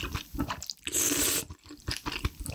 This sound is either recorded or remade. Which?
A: recorded